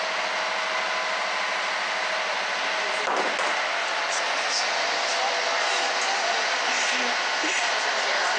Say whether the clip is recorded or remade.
recorded